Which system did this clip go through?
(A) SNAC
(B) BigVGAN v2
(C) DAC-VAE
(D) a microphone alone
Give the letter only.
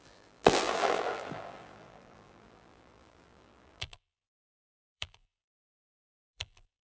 B